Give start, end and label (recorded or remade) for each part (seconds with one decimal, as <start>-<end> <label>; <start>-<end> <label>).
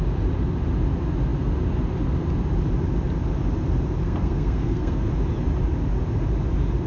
0.0-4.0 recorded; 4.0-5.1 remade; 5.1-6.9 recorded